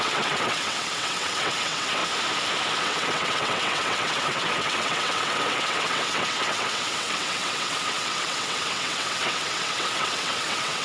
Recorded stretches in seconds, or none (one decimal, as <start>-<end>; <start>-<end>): 2.0-2.8

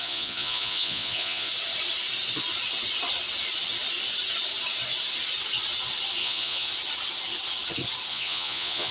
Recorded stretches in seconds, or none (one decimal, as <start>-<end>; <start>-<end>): 1.5-6.2; 6.7-8.1

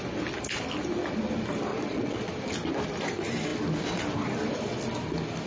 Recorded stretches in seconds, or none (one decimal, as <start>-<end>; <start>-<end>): 0.0-1.7; 2.3-5.5

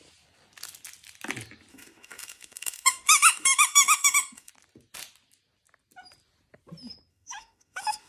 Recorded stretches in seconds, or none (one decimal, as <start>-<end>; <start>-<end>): 0.0-1.7; 4.5-7.1

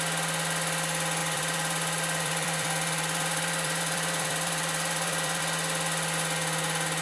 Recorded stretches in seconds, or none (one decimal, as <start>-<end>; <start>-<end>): 0.0-1.2; 5.4-7.0

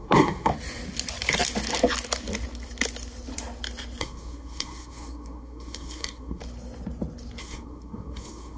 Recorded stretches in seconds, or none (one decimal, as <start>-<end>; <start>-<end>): 0.5-4.0; 6.4-7.4

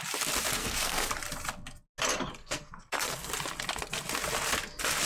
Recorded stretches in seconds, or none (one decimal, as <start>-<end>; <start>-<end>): 0.0-0.6; 1.1-2.4; 3.3-5.1